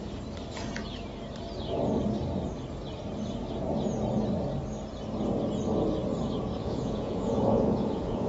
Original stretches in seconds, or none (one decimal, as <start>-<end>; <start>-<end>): 0.0-6.6